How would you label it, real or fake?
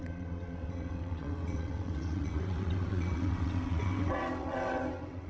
fake